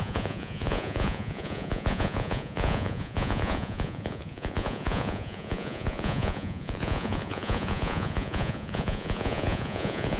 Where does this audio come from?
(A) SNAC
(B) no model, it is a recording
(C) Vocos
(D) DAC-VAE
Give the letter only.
C